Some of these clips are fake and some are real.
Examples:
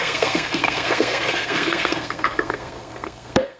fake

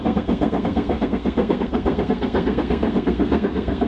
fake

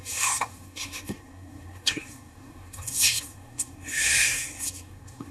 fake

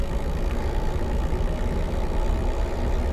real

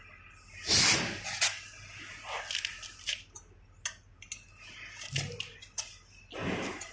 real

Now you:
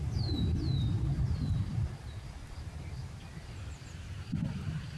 real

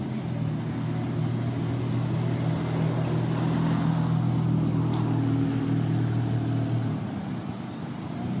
real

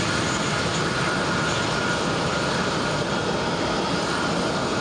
real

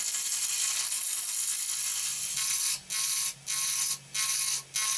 real